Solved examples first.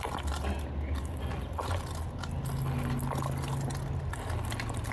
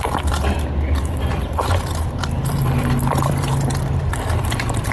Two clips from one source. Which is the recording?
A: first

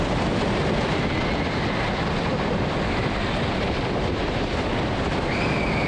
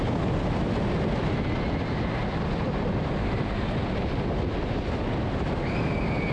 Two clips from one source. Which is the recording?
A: second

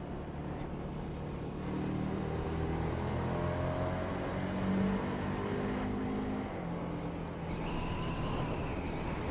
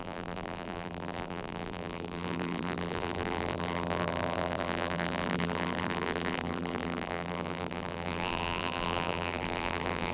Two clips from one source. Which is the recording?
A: first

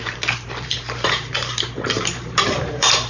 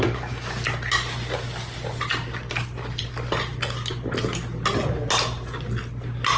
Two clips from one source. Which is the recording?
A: second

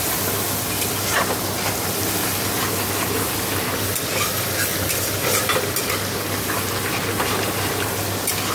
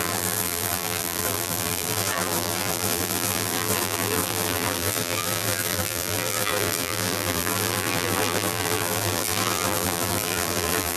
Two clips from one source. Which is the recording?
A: first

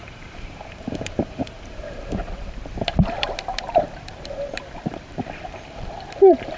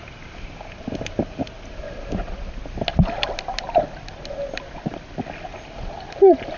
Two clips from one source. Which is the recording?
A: second